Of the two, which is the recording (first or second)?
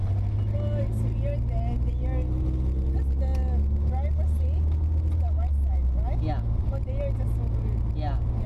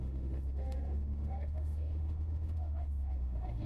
first